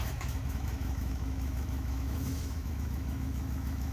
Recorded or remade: remade